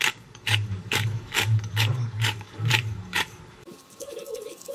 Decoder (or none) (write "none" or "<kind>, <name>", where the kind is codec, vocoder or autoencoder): codec, DAC